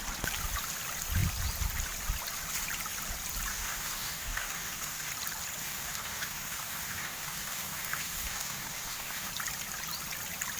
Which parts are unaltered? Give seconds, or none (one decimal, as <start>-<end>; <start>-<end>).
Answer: 0.0-3.5; 5.1-5.6; 9.3-10.6